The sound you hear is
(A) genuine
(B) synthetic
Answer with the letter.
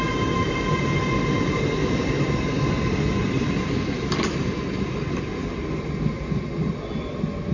A